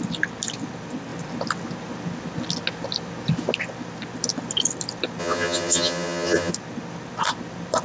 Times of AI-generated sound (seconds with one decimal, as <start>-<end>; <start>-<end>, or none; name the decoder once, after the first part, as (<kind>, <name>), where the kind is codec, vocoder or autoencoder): 5.2-6.5 (vocoder, HiFi-GAN)